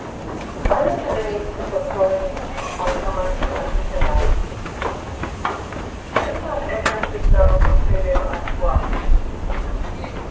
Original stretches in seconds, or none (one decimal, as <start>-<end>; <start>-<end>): 0.0-10.3